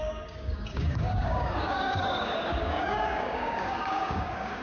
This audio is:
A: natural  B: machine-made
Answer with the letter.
B